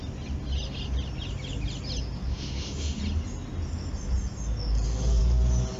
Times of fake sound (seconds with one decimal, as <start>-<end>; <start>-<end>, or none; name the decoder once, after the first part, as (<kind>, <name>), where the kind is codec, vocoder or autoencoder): 2.3-3.0 (autoencoder, DAC-VAE)